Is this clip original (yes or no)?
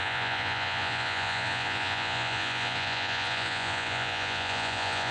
no